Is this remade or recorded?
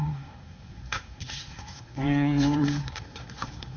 remade